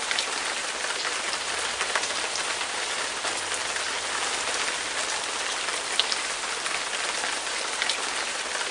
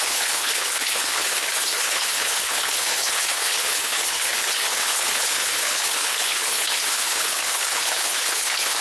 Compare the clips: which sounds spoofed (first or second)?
second